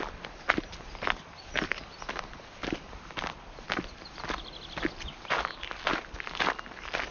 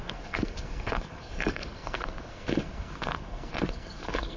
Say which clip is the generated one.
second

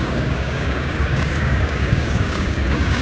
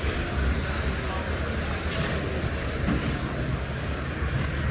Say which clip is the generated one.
first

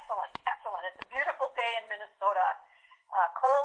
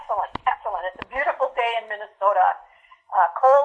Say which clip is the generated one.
first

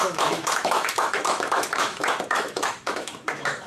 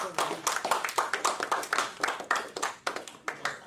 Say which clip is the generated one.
first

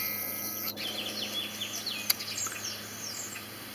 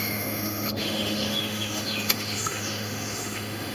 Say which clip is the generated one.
second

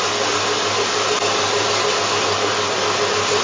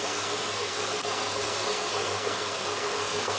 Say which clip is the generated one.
second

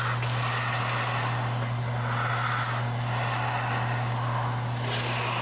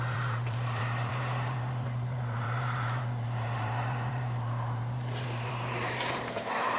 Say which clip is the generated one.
second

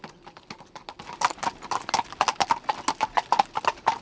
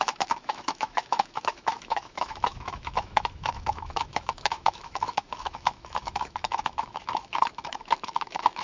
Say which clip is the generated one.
second